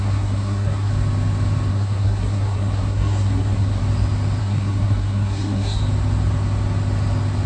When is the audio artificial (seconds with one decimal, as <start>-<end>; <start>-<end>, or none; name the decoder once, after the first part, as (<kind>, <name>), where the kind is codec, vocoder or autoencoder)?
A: 0.0-0.9 (codec, SNAC); 1.7-3.8; 4.4-5.8